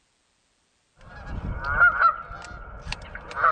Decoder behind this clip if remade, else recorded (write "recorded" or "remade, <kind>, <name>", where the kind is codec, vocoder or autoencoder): recorded